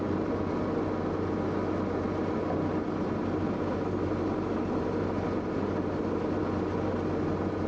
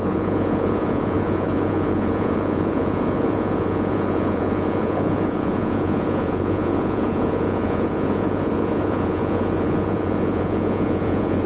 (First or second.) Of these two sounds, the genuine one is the first